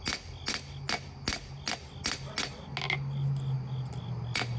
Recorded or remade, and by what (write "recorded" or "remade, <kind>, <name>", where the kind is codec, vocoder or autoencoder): recorded